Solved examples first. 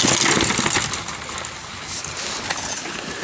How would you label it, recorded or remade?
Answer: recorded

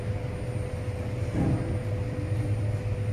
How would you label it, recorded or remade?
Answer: recorded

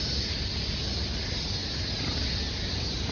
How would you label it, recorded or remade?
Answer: recorded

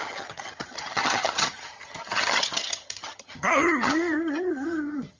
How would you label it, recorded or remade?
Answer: remade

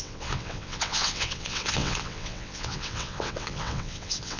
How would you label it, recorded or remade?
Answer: remade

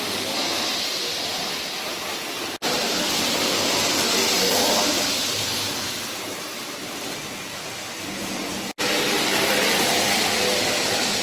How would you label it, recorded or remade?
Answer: recorded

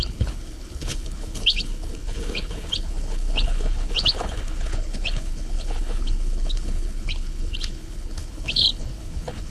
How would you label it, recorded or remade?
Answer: remade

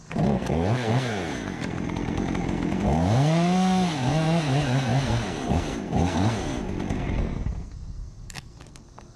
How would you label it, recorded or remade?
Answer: remade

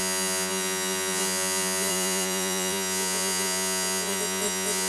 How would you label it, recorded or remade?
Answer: remade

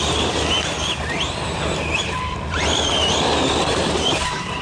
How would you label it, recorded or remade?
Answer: remade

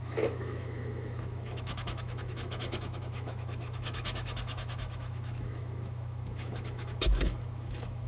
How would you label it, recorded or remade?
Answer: remade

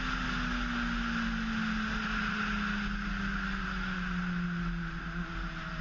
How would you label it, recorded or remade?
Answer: recorded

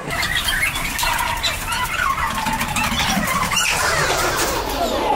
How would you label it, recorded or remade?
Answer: remade